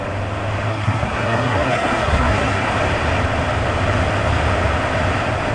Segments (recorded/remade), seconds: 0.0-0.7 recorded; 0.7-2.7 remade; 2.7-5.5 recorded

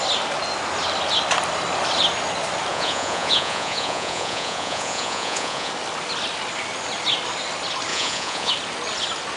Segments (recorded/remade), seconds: 0.0-2.7 recorded; 2.7-5.7 remade; 5.7-7.9 recorded; 7.9-8.5 remade; 8.5-9.4 recorded